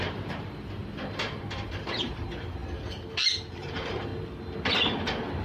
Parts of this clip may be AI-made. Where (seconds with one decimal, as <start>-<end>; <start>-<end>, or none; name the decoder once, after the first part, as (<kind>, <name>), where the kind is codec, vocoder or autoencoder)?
0.0-0.8 (vocoder, BigVGAN v2); 1.9-2.6; 3.5-4.1